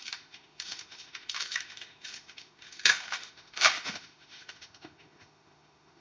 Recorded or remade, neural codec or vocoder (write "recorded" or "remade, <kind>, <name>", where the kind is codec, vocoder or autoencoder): remade, autoencoder, DAC-VAE